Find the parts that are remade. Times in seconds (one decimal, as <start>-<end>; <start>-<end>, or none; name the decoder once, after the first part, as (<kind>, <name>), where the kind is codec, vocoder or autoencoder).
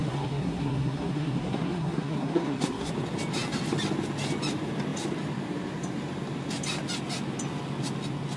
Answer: 0.0-2.9 (codec, SNAC)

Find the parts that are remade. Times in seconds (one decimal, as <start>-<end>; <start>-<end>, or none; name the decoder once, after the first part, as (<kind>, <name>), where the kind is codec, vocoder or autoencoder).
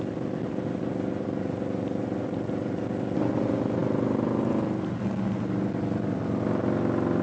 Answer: none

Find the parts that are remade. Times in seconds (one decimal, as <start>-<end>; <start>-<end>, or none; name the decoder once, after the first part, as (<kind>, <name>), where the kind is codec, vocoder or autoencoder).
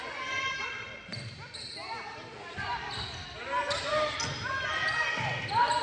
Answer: none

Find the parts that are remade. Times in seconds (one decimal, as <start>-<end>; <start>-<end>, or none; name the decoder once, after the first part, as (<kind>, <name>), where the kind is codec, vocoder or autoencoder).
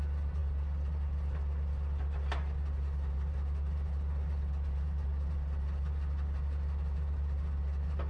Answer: none